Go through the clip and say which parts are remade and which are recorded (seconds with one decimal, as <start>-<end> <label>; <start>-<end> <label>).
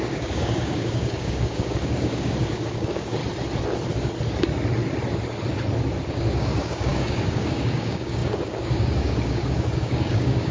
0.0-3.2 remade; 3.2-6.1 recorded; 6.1-10.5 remade